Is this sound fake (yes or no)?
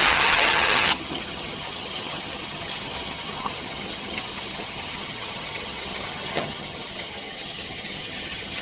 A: yes